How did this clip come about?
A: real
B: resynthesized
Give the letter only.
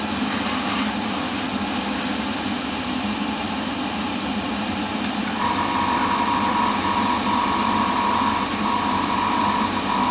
A